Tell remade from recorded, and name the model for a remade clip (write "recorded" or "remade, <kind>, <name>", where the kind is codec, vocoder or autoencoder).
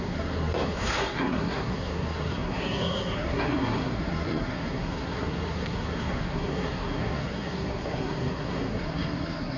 remade, codec, SNAC